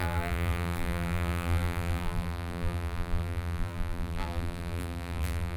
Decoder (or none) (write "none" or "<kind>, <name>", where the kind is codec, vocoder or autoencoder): vocoder, BigVGAN v2